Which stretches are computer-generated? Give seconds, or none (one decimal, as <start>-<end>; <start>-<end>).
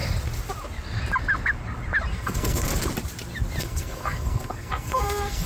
2.1-2.7; 3.6-5.5